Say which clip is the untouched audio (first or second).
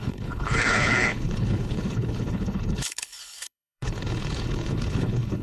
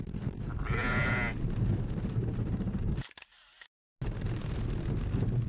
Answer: second